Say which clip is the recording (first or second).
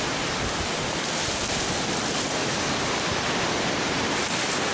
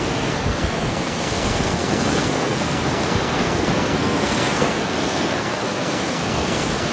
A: first